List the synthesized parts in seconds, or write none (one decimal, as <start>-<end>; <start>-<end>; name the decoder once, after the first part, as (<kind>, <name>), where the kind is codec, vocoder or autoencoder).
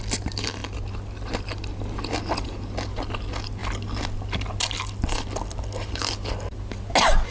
none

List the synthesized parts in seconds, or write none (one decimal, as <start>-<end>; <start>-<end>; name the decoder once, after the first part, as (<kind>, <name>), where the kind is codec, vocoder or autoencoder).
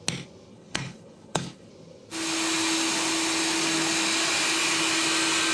0.5-1.7 (codec, HILCodec)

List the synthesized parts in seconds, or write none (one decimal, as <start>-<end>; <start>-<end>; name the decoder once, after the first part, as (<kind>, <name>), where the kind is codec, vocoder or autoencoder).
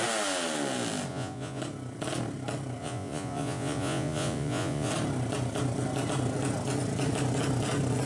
1.1-1.6 (vocoder, Vocos); 2.8-4.9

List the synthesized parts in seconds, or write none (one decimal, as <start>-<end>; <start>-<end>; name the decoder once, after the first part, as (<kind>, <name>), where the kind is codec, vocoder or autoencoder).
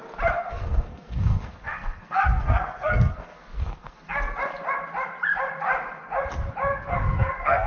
0.4-4.2 (codec, SNAC); 6.7-7.7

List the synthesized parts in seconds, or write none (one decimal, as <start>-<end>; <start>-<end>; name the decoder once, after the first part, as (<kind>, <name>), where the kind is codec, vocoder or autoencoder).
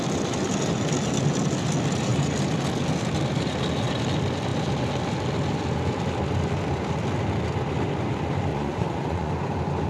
8.5-9.3 (vocoder, Vocos)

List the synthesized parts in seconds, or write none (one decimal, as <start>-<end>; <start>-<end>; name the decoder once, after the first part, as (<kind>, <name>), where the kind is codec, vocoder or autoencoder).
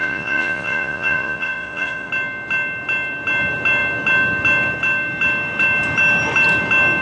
0.0-2.1 (vocoder, Vocos)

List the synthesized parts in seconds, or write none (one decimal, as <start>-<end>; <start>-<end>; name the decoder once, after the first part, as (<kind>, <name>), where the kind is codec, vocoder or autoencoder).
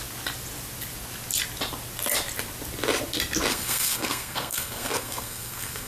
3.5-5.9 (codec, SNAC)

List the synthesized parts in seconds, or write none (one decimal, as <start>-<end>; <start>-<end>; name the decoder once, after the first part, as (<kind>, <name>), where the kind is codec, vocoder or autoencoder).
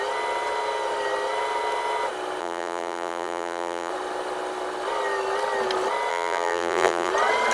2.4-3.9 (vocoder, BigVGAN v2); 6.1-7.1